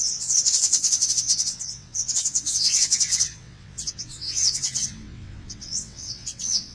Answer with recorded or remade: remade